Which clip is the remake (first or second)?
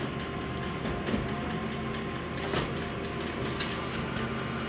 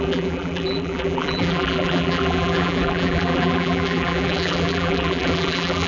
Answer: second